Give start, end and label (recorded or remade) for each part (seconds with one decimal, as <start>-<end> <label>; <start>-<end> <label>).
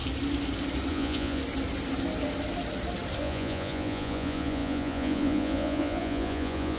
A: 0.0-0.9 recorded; 0.9-1.4 remade; 1.4-3.2 recorded; 3.2-6.8 remade